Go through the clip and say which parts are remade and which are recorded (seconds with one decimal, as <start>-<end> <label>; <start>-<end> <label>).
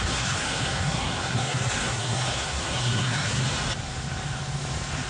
0.0-3.4 remade; 3.4-5.1 recorded